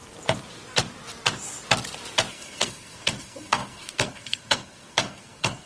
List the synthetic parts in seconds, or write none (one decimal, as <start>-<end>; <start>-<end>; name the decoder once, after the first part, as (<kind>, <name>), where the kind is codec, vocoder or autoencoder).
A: 2.3-5.7 (codec, SNAC)